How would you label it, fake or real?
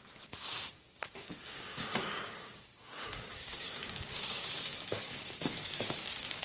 fake